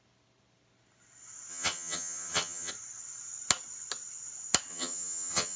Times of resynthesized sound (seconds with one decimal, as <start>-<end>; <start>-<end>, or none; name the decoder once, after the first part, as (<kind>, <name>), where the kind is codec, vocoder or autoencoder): 1.5-2.7 (vocoder, HiFi-GAN); 4.7-5.6